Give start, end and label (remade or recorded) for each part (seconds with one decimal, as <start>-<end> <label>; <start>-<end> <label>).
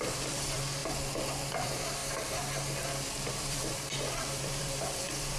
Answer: 0.0-0.8 remade; 0.8-1.4 recorded; 1.4-2.0 remade; 2.0-3.3 recorded; 3.3-5.4 remade